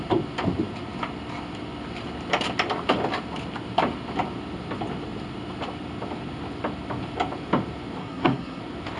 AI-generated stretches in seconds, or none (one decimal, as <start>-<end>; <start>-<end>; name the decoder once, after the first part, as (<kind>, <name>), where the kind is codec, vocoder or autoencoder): 8.0-8.6 (codec, SNAC)